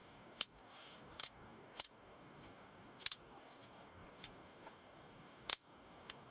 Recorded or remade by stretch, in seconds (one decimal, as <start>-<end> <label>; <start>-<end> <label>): 0.0-6.3 remade